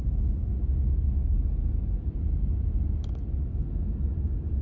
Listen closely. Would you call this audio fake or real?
real